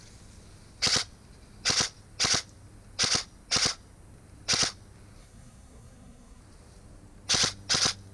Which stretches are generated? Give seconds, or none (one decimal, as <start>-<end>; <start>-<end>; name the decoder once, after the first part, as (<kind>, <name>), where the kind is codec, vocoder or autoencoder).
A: 5.2-6.4 (codec, SNAC)